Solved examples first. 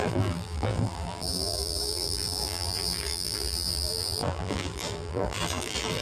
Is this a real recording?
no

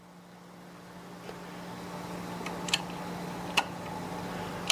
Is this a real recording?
yes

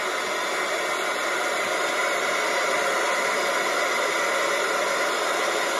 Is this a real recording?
yes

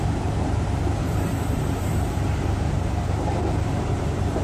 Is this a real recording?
no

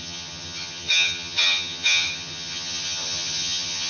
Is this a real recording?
no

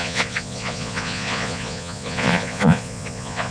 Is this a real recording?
no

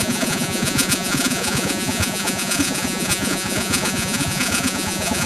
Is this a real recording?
no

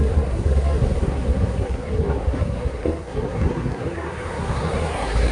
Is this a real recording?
no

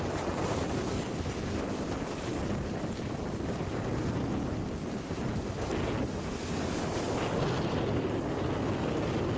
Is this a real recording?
yes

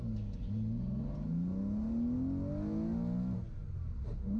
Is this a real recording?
yes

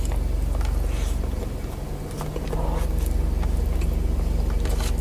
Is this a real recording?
yes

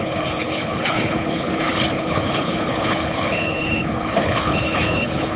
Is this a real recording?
no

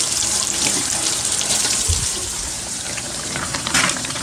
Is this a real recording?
no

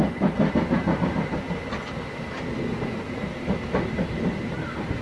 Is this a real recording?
yes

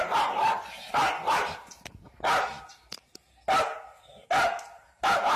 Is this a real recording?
yes